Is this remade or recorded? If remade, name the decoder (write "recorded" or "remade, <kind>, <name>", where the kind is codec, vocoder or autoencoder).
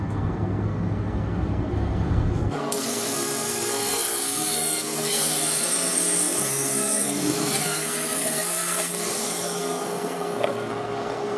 remade, codec, SNAC